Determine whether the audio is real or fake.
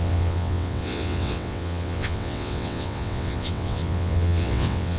fake